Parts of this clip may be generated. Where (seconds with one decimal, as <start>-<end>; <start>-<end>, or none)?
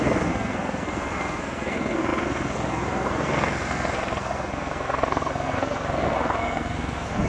0.0-7.3